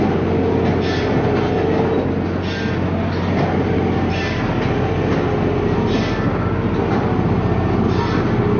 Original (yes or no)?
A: yes